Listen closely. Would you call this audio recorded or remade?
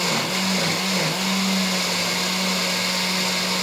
recorded